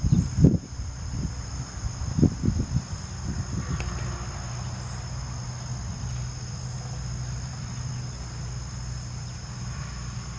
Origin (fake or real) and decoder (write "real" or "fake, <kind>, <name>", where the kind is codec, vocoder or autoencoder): real